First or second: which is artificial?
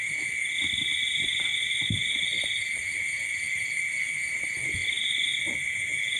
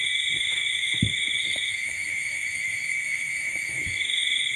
second